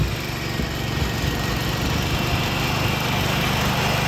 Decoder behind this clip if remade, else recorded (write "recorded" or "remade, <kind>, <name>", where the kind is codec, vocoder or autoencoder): recorded